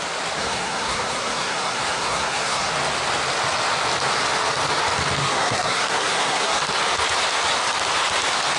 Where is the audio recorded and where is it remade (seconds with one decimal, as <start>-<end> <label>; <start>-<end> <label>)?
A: 0.0-0.4 recorded; 0.4-2.7 remade; 2.7-5.2 recorded; 5.2-6.6 remade; 6.6-8.6 recorded